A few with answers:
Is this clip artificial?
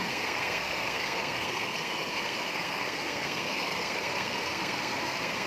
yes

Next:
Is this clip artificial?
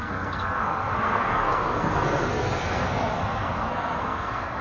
yes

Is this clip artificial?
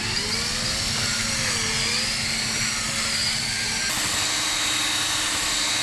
no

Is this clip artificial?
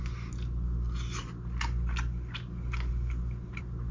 no